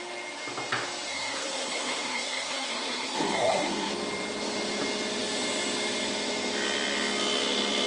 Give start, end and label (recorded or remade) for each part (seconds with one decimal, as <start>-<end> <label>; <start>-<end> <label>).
0.0-1.1 recorded; 1.1-3.9 remade; 3.9-7.9 recorded